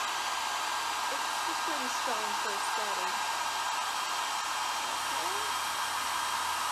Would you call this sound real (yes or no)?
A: yes